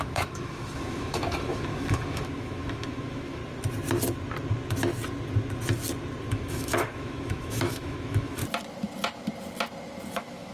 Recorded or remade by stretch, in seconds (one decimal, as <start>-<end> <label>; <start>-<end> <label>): 0.0-3.4 remade; 3.4-6.3 recorded; 6.3-8.4 remade; 8.4-10.1 recorded; 10.1-10.5 remade